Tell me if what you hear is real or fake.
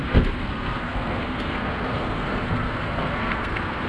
fake